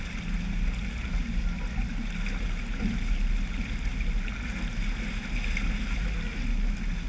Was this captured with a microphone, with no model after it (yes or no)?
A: yes